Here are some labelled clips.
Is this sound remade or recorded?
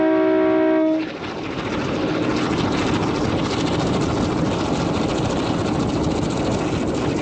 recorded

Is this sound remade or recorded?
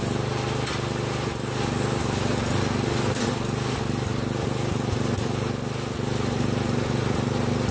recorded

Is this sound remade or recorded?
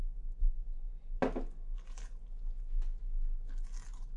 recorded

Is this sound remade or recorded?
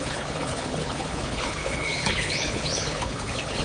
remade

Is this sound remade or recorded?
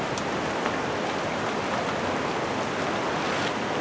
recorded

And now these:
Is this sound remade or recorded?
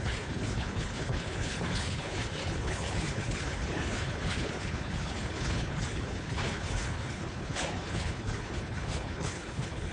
remade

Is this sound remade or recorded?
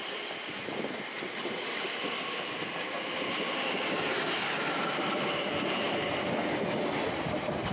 recorded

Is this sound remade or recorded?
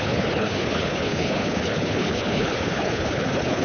remade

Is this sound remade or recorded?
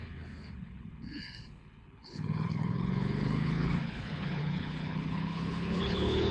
remade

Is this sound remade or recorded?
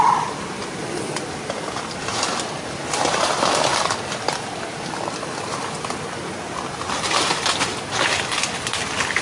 recorded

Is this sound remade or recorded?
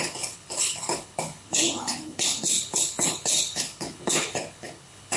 remade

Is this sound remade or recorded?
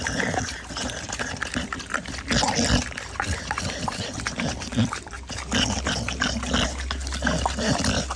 recorded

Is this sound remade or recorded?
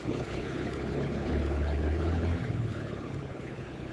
remade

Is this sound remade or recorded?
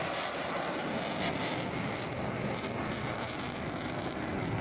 recorded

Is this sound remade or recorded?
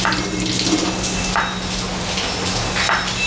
recorded